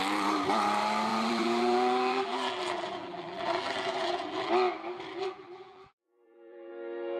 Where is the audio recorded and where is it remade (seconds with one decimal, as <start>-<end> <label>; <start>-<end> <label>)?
0.0-1.1 recorded; 1.1-4.5 remade; 4.5-5.1 recorded; 5.1-6.7 remade; 6.7-7.2 recorded